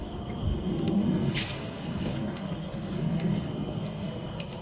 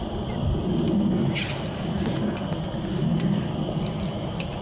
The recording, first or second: second